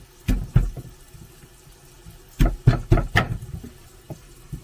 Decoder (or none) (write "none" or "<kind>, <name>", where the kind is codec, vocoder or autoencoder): none